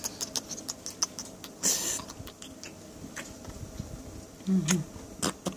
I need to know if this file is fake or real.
real